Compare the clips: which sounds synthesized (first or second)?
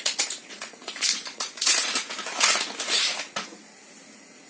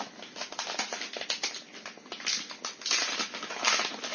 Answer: first